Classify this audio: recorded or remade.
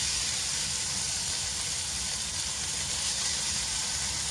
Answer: recorded